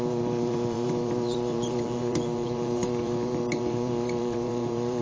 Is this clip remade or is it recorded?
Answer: remade